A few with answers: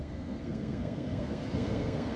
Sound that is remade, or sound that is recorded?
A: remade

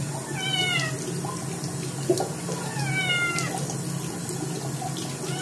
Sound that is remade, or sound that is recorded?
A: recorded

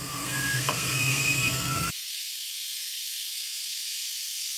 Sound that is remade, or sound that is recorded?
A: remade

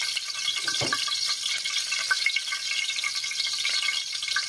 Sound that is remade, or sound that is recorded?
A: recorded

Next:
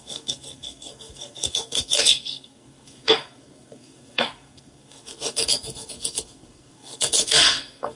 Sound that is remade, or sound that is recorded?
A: remade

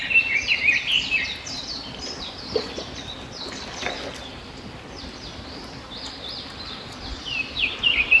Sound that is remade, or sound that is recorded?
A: recorded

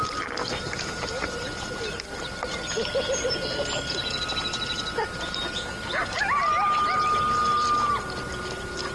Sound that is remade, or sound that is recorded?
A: recorded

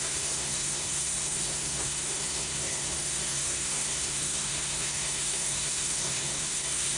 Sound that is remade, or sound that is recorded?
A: remade